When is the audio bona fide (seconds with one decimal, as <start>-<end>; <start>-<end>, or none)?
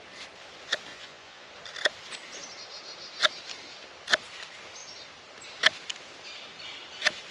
0.0-0.9; 1.5-7.3